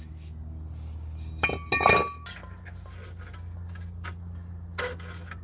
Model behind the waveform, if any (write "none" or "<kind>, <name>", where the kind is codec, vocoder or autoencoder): none